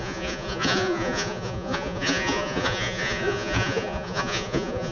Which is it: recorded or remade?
remade